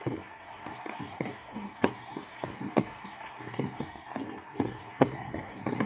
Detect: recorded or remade remade